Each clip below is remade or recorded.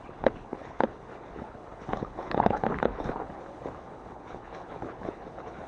remade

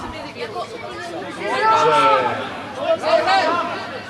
recorded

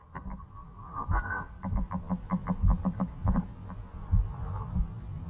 recorded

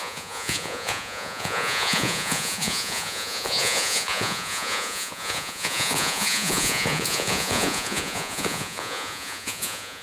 remade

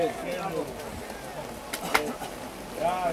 recorded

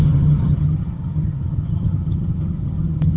remade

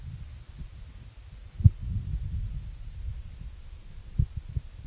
recorded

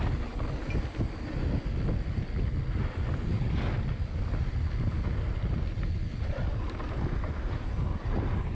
recorded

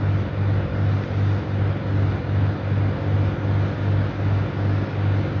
recorded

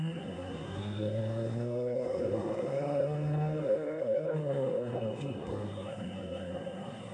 remade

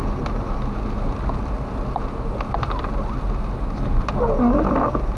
recorded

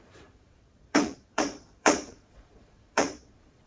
remade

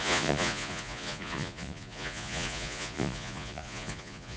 remade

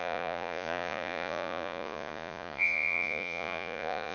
remade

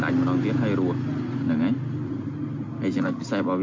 recorded